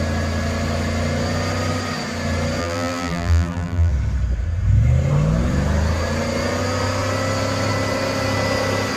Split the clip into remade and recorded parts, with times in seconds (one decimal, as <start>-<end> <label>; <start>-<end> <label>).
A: 0.0-2.6 recorded; 2.6-3.9 remade; 3.9-9.0 recorded